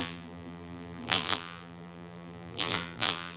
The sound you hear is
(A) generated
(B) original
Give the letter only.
A